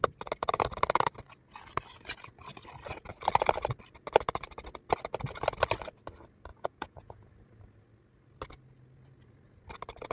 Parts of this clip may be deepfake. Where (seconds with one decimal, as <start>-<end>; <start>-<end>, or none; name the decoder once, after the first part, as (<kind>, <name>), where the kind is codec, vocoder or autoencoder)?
6.5-7.3 (vocoder, Vocos)

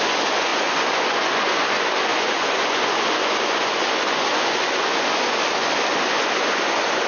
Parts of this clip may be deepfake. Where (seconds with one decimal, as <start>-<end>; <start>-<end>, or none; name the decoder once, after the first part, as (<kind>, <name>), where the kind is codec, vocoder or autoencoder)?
0.0-7.1 (vocoder, Vocos)